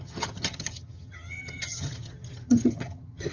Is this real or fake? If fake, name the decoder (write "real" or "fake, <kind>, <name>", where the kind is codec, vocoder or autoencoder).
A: fake, vocoder, HiFi-GAN